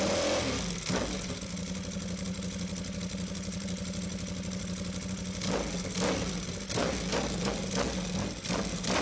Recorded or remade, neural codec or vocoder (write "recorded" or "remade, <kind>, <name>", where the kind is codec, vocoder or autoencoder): recorded